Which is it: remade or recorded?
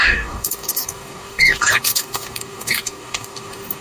remade